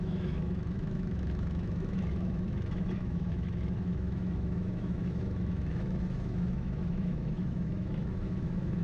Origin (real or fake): fake